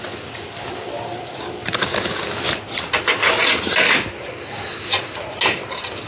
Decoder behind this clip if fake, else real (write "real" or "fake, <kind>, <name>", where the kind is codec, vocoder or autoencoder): real